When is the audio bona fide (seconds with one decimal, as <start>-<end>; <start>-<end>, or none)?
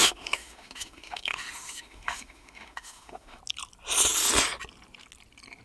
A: 3.4-5.6